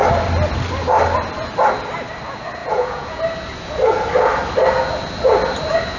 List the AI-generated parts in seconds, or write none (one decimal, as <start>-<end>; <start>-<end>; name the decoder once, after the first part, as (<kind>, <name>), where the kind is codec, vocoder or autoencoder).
2.6-3.2 (vocoder, Vocos)